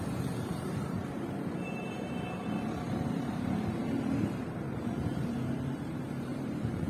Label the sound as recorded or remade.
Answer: remade